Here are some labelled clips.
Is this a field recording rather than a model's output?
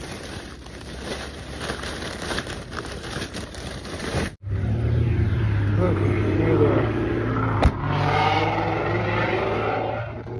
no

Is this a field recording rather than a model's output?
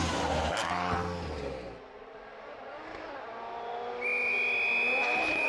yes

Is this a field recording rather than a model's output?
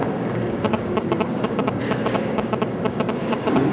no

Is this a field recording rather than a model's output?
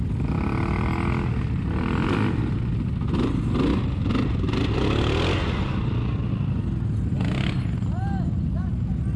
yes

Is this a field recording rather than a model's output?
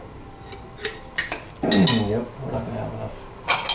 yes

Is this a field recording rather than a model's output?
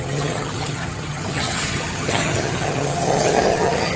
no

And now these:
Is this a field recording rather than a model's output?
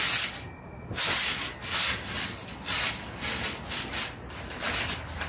yes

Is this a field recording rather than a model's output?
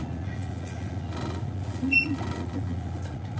no